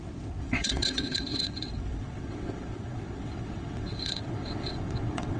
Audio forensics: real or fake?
fake